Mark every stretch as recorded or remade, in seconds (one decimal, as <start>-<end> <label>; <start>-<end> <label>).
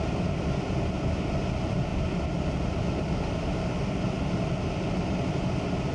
0.0-5.9 recorded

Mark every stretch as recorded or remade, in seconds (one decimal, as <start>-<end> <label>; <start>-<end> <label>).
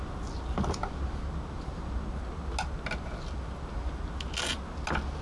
0.0-5.2 recorded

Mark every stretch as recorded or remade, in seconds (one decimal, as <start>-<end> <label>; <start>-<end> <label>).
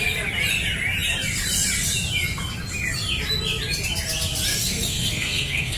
0.0-4.5 recorded; 4.5-5.8 remade